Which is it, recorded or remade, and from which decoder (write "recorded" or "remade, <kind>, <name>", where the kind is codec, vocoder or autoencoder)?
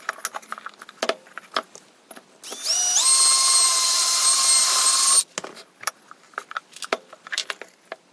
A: recorded